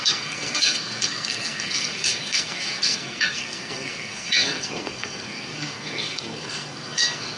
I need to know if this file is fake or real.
fake